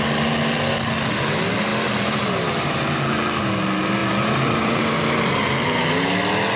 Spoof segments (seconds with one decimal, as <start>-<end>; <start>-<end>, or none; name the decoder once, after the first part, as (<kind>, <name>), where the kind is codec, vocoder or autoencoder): 1.7-3.0 (vocoder, BigVGAN v2); 4.0-4.8